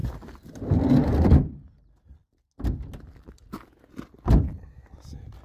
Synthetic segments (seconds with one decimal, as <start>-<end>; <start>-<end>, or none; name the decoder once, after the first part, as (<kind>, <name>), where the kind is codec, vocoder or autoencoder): none